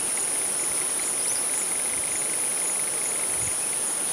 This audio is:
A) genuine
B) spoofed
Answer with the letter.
A